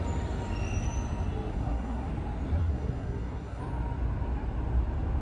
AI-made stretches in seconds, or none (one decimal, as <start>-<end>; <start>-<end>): 1.5-2.1; 2.6-3.6